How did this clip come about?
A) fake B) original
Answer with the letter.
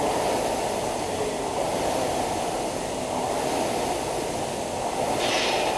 B